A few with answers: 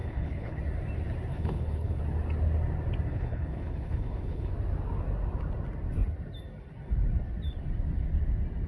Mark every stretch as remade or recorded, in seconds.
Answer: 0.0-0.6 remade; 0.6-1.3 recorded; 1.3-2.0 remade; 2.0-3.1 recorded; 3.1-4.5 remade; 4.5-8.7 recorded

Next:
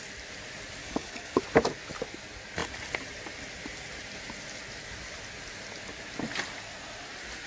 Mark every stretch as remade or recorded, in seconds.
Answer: 0.0-0.8 recorded; 0.8-1.4 remade; 1.4-7.5 recorded

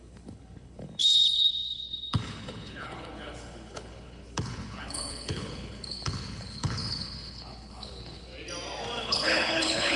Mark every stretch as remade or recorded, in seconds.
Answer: 0.0-8.3 remade; 8.3-9.0 recorded; 9.0-10.0 remade

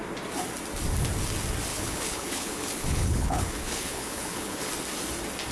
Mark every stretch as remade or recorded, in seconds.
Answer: 0.0-1.7 recorded; 1.7-4.7 remade; 4.7-5.5 recorded

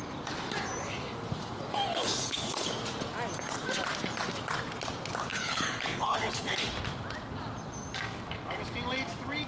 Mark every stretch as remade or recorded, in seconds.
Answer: 0.0-1.9 recorded; 1.9-2.7 remade; 2.7-5.3 recorded; 5.3-6.7 remade; 6.7-9.5 recorded